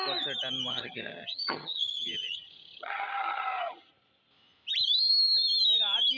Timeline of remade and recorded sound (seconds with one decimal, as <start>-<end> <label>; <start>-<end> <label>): 0.0-0.7 recorded; 0.7-3.9 remade; 3.9-6.2 recorded